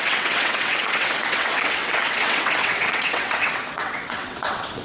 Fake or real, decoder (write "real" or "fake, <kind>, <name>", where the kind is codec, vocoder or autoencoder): fake, vocoder, WaveNeXt